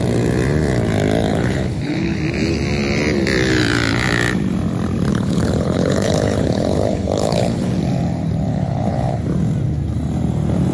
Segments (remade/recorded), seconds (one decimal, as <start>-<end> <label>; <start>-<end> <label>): 0.0-1.3 recorded; 1.3-2.2 remade; 2.2-5.1 recorded; 5.1-7.7 remade; 7.7-8.5 recorded; 8.5-9.2 remade; 9.2-10.7 recorded